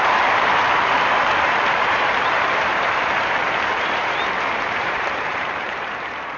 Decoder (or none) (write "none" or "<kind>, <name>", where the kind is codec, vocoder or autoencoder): vocoder, BigVGAN v2